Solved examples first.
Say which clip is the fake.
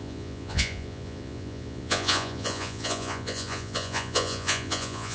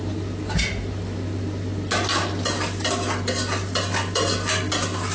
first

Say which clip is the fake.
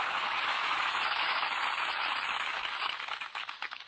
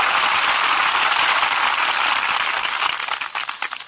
first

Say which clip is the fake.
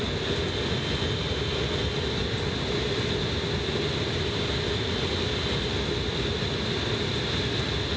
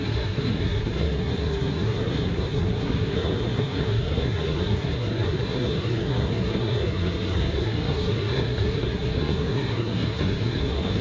second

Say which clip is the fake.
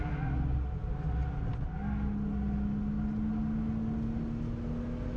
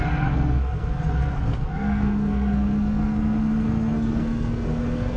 second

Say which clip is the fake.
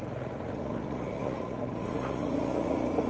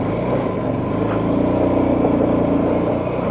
first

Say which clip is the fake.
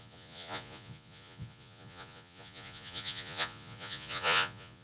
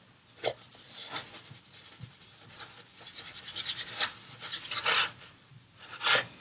first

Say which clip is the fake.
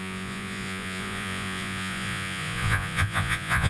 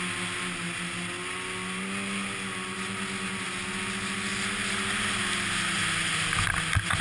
first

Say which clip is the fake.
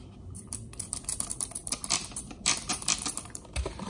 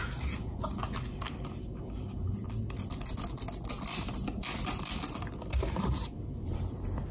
first